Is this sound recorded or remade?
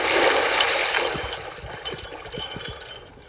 recorded